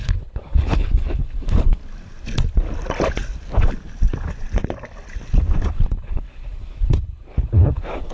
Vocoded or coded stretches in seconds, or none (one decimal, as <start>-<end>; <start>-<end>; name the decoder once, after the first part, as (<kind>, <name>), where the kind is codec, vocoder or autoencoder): 0.0-1.8 (codec, HILCodec); 5.7-8.1